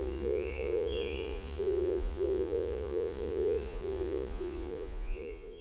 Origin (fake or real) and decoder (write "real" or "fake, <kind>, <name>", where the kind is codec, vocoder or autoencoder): fake, vocoder, Vocos